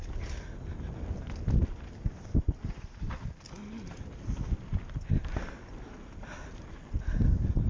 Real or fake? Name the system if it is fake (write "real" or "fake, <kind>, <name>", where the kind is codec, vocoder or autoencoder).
real